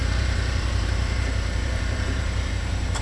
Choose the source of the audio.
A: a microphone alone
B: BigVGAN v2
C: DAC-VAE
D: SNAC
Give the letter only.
B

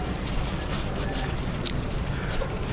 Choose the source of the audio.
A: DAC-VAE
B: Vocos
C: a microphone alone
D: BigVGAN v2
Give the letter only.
D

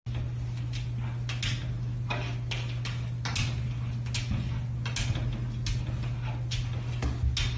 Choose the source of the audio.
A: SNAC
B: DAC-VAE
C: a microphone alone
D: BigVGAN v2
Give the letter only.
C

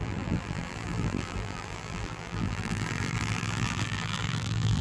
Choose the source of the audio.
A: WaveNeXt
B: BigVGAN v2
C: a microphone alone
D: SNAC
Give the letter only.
B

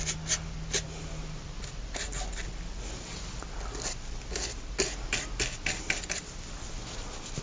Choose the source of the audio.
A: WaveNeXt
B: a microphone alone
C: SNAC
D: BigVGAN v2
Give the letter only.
B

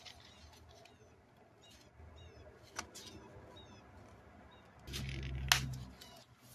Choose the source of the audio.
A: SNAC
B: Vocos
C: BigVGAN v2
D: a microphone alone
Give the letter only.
D